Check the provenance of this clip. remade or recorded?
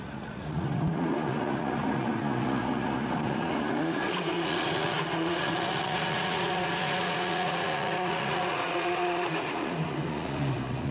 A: remade